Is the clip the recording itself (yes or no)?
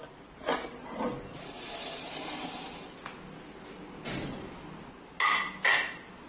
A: yes